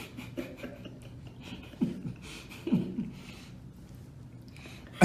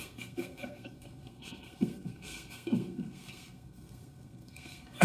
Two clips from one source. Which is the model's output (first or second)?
second